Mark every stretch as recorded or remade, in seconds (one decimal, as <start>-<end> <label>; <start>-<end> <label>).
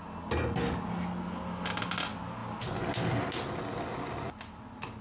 0.0-5.0 recorded